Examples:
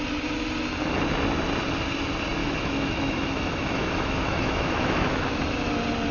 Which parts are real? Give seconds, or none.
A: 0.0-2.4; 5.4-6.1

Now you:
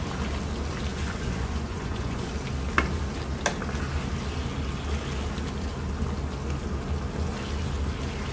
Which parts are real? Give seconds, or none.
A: 0.0-0.9; 2.3-8.3

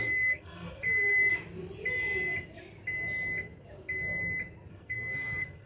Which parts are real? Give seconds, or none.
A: 1.3-4.7

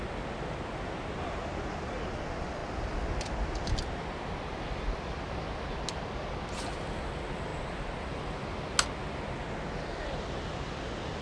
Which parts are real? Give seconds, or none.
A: 0.0-11.2

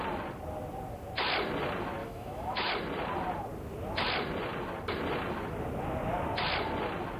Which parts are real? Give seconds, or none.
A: 0.0-2.0; 2.7-7.2